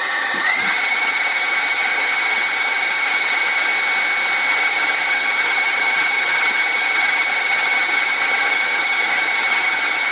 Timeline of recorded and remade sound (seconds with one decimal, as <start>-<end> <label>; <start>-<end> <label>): 0.0-3.7 remade; 3.7-4.5 recorded; 4.5-10.1 remade